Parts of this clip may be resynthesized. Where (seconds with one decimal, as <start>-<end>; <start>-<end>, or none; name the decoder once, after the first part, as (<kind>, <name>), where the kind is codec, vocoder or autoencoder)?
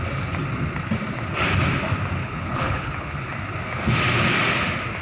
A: 2.2-3.3 (codec, HILCodec)